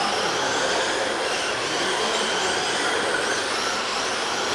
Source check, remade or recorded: recorded